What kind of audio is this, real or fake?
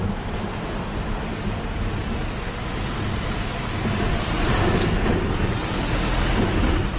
real